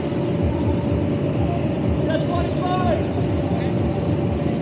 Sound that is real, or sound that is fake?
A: real